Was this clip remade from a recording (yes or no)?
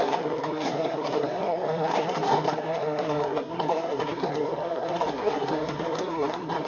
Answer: yes